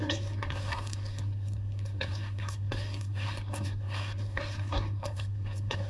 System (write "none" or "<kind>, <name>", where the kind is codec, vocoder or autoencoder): codec, SNAC